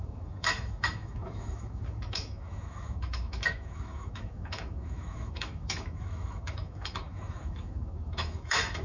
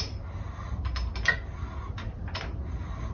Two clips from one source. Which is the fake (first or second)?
first